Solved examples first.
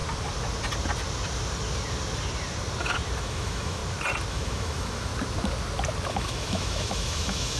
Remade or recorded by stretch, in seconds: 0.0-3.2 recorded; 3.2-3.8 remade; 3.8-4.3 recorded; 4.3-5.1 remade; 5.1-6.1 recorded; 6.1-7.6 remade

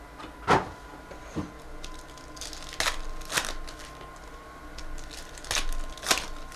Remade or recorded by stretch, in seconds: 0.0-6.6 recorded

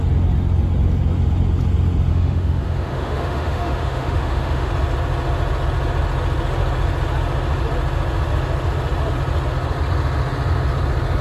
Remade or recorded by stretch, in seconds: 0.0-2.1 recorded; 2.1-4.7 remade; 4.7-11.2 recorded

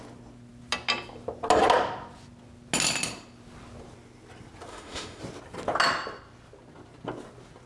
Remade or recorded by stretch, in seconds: 0.0-4.7 recorded; 4.7-5.2 remade; 5.2-7.7 recorded

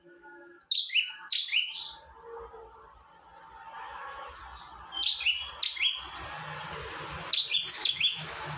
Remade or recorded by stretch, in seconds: 0.0-1.3 remade; 1.3-3.8 recorded; 3.8-4.4 remade; 4.4-7.7 recorded; 7.7-8.6 remade